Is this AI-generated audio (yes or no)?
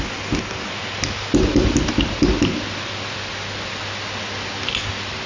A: no